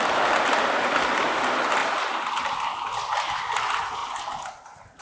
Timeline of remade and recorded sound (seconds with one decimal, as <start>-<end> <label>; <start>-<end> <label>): 0.0-5.0 recorded